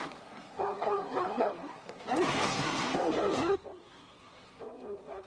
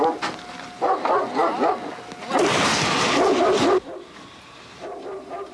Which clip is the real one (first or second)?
second